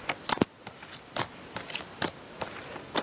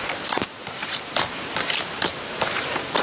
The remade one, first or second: second